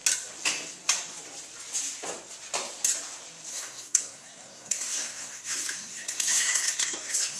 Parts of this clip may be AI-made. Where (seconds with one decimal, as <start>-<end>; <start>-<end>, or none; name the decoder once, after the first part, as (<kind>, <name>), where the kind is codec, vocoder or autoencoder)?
3.5-7.4 (codec, SNAC)